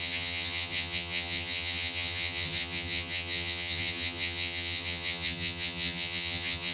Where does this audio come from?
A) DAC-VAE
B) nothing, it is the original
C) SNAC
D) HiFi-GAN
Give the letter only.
D